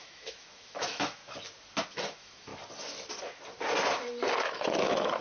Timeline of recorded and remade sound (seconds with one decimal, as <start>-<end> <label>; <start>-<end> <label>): 0.0-1.2 remade; 1.2-1.9 recorded; 1.9-2.5 remade; 2.5-4.3 recorded; 4.3-5.2 remade